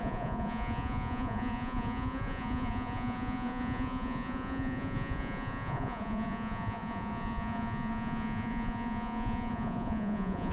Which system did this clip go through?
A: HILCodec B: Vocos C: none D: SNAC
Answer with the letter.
B